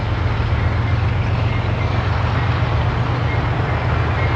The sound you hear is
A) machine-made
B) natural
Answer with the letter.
B